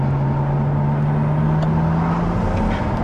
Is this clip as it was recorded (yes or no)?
yes